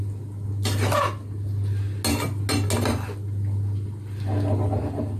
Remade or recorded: recorded